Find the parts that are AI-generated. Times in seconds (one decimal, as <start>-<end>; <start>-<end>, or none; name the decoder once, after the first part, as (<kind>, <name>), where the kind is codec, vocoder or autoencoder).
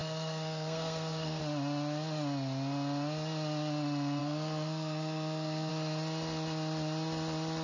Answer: 0.0-1.4 (codec, SNAC); 4.2-5.7